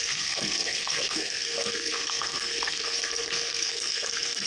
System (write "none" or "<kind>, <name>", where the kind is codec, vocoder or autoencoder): codec, SNAC